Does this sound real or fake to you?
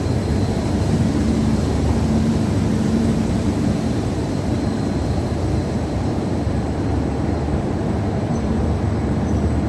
fake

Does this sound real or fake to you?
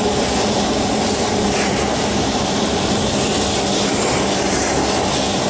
real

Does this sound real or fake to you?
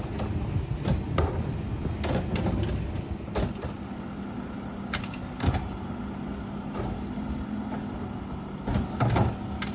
real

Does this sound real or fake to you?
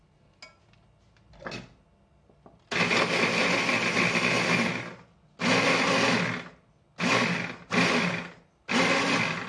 real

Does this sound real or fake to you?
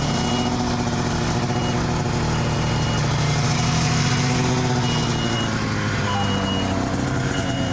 real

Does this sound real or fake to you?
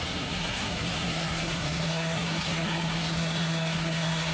fake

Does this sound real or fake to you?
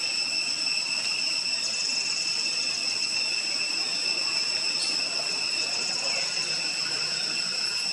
real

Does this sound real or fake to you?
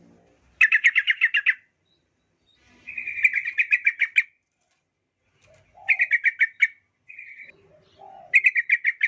real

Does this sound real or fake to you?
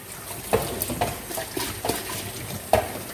real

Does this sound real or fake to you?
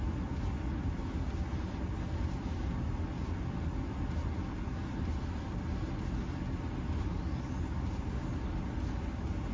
real